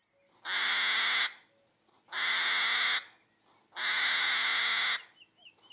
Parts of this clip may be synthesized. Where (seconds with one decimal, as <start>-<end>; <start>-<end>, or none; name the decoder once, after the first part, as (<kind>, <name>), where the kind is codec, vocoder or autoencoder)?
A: none